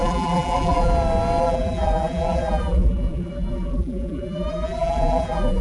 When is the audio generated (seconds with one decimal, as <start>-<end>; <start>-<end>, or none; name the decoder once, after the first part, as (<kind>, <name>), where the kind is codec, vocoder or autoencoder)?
0.0-0.9 (vocoder, BigVGAN v2); 1.4-5.6